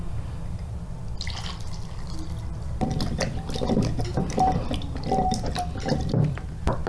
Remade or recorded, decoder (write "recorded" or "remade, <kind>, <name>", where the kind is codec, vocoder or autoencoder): recorded